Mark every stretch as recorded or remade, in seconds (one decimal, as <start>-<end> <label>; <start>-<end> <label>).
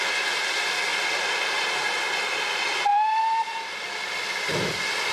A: 0.0-0.9 recorded; 0.9-1.7 remade; 1.7-2.9 recorded; 2.9-4.5 remade; 4.5-5.1 recorded